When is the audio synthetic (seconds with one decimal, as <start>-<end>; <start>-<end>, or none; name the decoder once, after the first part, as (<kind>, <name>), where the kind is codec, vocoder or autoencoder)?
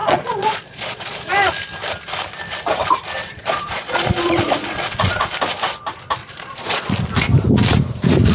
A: 0.0-1.3 (vocoder, Vocos); 3.2-5.3; 6.2-6.9